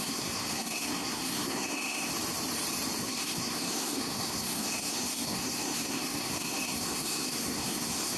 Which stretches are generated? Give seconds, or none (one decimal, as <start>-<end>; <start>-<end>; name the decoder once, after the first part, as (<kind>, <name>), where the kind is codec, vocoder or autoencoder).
0.0-2.1 (codec, SNAC); 3.0-8.2